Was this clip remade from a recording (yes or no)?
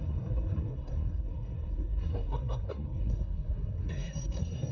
yes